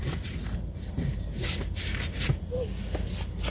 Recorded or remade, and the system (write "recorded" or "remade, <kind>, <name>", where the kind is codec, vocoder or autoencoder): recorded